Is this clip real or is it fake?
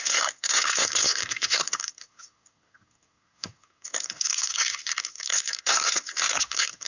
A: fake